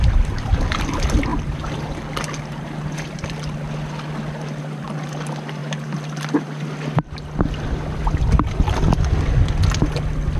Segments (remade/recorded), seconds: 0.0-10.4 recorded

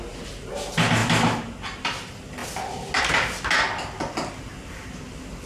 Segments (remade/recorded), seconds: 0.0-5.5 recorded

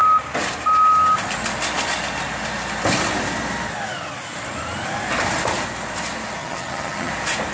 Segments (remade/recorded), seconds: 0.0-6.4 recorded; 6.4-7.1 remade; 7.1-7.5 recorded

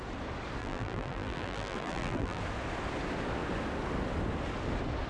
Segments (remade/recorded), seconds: 0.0-0.6 recorded; 0.6-2.4 remade; 2.4-5.1 recorded

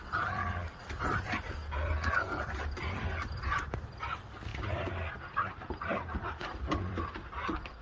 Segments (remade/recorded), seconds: 0.0-1.6 remade; 1.6-2.7 recorded; 2.7-7.8 remade

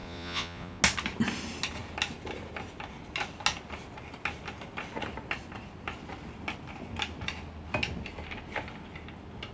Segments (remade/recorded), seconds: 0.0-0.8 remade; 0.8-9.5 recorded

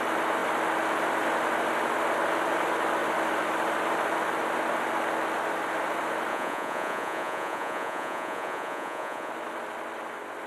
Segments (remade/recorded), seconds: 0.0-6.3 recorded; 6.3-9.3 remade; 9.3-10.5 recorded

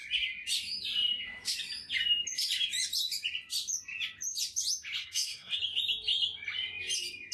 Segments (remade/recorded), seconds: 0.0-5.0 recorded; 5.0-5.6 remade; 5.6-7.3 recorded